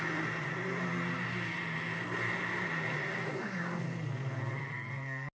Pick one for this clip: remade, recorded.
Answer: recorded